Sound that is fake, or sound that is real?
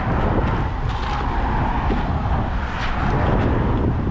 real